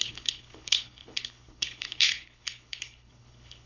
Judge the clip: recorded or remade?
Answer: remade